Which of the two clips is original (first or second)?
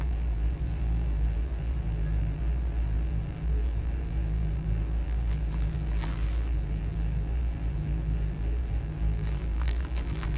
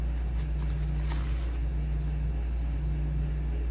second